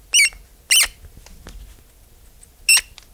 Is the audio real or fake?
real